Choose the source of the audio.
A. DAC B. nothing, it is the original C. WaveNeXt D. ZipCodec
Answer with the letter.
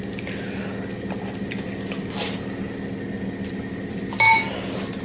B